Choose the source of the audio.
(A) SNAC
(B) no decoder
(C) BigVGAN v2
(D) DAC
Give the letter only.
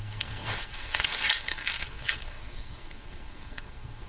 A